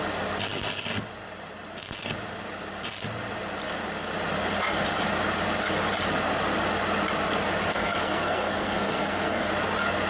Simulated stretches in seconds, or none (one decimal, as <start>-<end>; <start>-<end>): 7.7-9.5